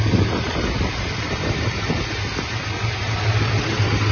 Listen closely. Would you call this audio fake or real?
real